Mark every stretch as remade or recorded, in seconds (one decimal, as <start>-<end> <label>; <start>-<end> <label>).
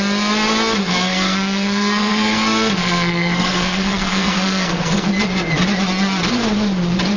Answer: 0.0-0.8 recorded; 0.8-5.1 remade; 5.1-7.2 recorded